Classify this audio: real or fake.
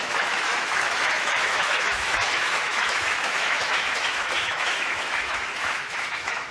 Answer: fake